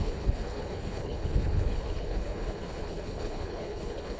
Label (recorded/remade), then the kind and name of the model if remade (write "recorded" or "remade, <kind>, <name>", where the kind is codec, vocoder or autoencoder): remade, codec, HILCodec